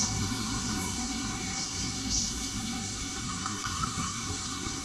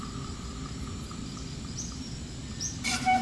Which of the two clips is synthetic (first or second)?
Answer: first